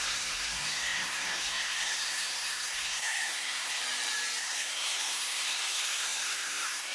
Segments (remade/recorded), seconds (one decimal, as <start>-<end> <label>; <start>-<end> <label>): 0.0-3.8 remade; 3.8-4.4 recorded; 4.4-6.9 remade